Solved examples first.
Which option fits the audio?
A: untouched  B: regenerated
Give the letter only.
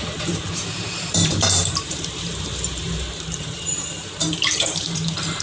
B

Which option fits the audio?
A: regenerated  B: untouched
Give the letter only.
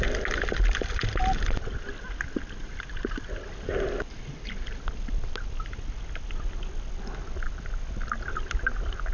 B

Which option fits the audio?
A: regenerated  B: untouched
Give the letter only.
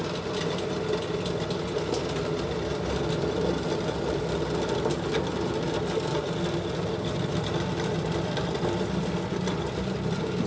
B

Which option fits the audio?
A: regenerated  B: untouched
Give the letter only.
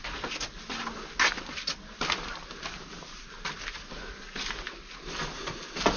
B